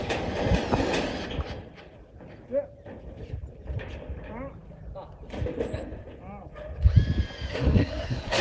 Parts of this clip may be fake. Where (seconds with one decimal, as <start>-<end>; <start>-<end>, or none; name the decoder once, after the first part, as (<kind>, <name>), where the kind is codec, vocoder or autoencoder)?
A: 7.5-8.4 (codec, SNAC)